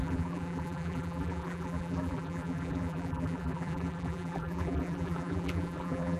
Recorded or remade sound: remade